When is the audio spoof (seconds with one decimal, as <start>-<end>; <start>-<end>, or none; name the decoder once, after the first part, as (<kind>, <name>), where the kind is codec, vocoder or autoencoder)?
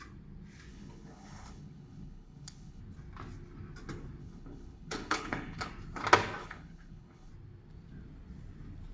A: 0.7-2.8 (codec, HILCodec); 4.2-5.7; 6.4-7.3